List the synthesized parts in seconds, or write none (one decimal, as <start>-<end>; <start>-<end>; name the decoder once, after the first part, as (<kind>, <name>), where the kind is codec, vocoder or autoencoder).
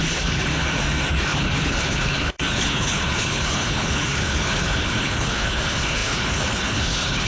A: 0.0-0.5 (codec, HILCodec); 1.1-7.3